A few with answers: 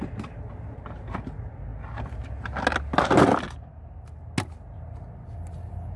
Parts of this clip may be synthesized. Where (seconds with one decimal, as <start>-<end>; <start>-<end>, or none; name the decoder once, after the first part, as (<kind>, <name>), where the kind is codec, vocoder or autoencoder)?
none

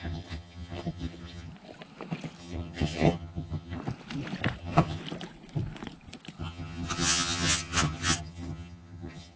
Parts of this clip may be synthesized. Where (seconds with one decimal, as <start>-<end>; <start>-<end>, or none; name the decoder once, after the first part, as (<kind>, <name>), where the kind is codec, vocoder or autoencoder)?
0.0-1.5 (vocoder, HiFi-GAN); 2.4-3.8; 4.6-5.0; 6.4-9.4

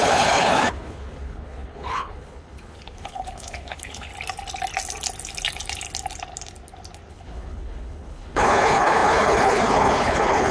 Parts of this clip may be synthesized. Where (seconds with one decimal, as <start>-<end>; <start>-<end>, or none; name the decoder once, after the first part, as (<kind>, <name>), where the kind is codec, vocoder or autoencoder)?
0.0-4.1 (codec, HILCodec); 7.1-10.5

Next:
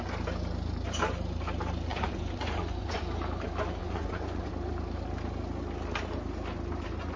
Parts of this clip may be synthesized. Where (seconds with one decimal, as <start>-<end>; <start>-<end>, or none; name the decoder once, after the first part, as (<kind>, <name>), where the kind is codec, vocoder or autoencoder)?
1.9-3.0 (vocoder, Vocos); 3.8-4.5

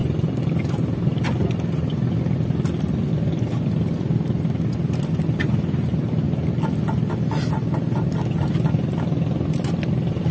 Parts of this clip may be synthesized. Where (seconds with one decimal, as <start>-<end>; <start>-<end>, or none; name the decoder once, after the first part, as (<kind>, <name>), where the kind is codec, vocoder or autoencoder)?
none